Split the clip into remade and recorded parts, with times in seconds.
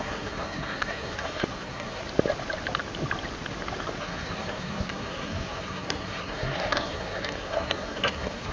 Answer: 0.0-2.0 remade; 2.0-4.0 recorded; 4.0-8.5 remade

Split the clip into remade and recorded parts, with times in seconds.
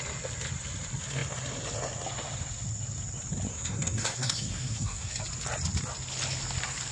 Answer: 0.0-3.5 recorded; 3.5-5.2 remade; 5.2-6.9 recorded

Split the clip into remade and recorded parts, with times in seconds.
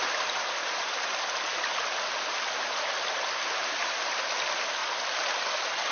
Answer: 0.0-5.9 recorded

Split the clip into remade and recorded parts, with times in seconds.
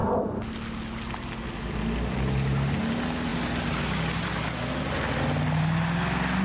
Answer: 0.0-6.4 recorded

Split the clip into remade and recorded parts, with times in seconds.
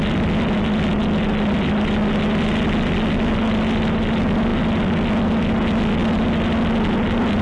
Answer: 0.0-7.4 recorded